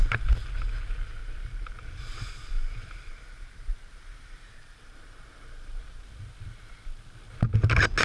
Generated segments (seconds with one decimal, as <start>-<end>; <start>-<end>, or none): 1.2-6.0